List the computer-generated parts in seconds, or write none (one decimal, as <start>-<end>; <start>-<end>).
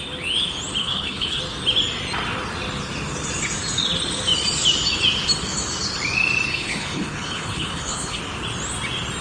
0.8-1.4; 6.5-8.2